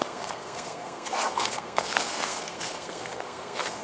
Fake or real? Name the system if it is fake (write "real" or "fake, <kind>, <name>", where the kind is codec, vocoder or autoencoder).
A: fake, codec, SNAC